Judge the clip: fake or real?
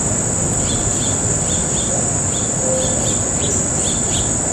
real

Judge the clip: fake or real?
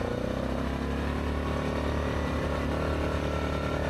real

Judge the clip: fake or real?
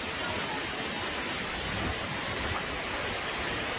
fake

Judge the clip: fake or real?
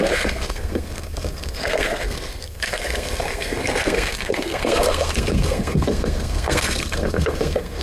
fake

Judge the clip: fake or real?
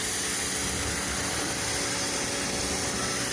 real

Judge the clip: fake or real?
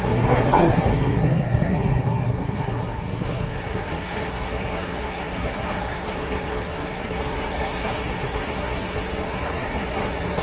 fake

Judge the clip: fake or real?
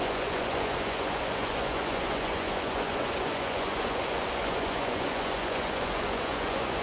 fake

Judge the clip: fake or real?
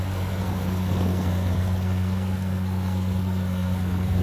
fake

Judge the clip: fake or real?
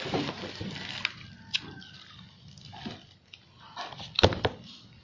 fake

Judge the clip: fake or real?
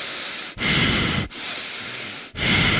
real